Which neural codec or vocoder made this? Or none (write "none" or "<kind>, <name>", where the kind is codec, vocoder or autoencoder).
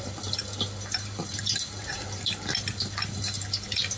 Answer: none